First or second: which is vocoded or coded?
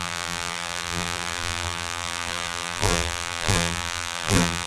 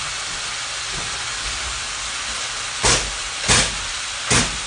first